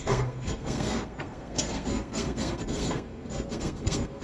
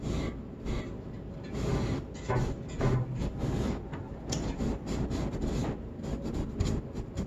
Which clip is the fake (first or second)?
first